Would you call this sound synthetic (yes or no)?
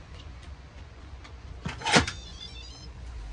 yes